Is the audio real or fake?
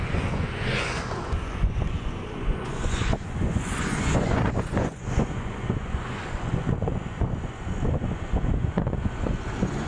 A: fake